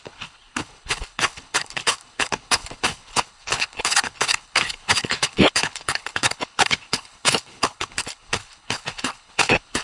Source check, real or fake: fake